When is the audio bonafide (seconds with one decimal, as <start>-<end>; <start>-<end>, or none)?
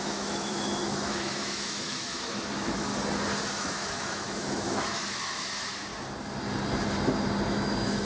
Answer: 2.9-3.6; 5.9-7.5